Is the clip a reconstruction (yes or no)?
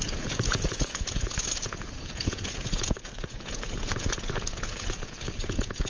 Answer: yes